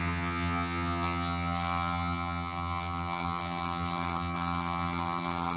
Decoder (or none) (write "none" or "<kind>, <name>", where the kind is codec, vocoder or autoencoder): vocoder, HiFi-GAN